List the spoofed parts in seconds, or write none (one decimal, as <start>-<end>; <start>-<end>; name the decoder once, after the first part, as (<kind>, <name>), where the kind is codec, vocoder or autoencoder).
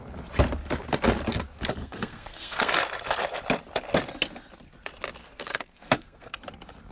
1.8-2.7 (codec, SNAC); 5.2-6.4